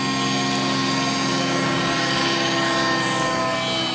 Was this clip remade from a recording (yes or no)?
no